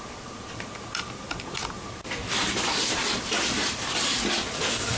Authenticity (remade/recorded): remade